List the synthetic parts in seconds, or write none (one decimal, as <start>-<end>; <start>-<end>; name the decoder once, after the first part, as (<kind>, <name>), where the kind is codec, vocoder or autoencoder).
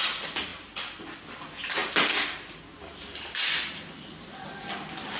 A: none